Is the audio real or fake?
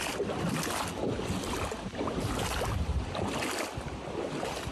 real